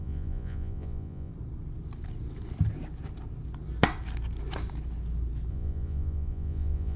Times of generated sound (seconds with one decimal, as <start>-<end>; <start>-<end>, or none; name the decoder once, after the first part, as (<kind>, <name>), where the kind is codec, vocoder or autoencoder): 0.0-1.3 (vocoder, Vocos); 5.5-7.0